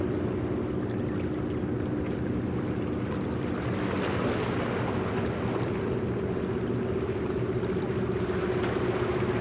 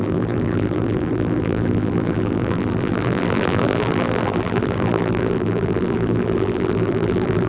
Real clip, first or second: first